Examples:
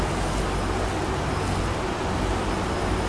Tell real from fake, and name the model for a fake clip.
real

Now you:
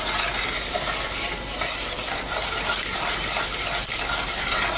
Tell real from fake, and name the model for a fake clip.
real